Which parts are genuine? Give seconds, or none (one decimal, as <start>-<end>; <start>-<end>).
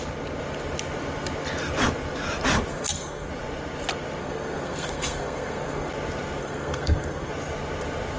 0.0-2.7; 3.3-4.2; 5.9-6.4; 7.3-8.2